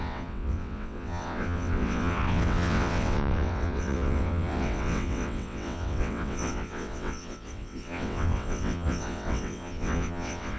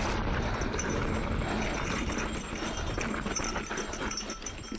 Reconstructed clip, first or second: first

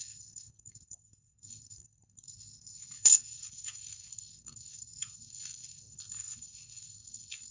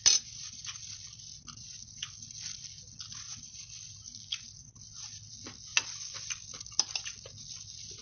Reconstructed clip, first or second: first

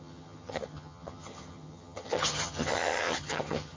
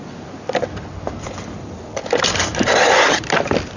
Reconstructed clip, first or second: first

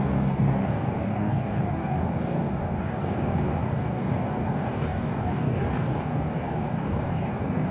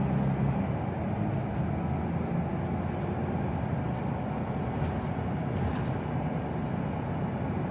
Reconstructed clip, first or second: first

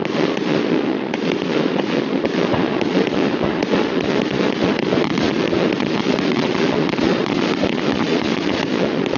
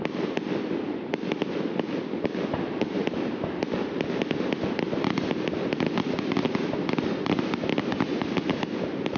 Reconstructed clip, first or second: first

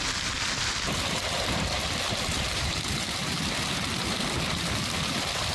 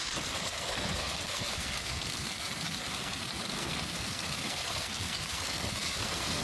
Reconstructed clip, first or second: second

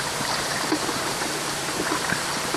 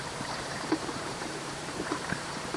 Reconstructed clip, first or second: second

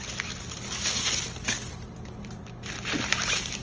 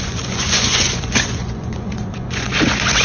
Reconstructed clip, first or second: second